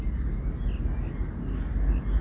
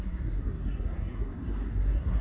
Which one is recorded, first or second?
first